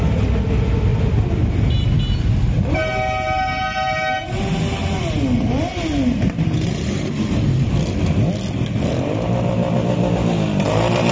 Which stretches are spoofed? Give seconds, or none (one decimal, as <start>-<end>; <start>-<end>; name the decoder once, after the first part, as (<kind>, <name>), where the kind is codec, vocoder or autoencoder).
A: 5.7-7.7 (vocoder, BigVGAN v2)